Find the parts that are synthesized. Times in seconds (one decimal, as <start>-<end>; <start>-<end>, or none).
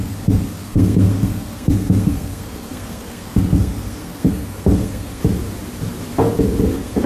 0.0-5.2; 6.6-7.1